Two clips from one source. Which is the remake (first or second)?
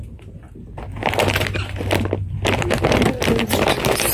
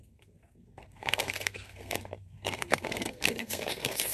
second